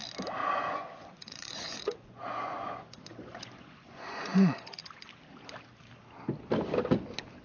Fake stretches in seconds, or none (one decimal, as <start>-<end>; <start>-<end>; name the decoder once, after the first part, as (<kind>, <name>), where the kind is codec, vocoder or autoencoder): 0.4-4.8 (vocoder, Vocos)